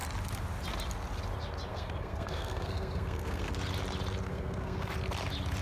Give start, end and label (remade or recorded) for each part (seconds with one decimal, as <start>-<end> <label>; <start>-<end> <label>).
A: 0.0-1.7 recorded; 1.7-3.5 remade; 3.5-4.3 recorded; 4.3-4.9 remade; 4.9-5.6 recorded